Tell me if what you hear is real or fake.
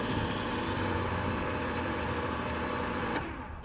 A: fake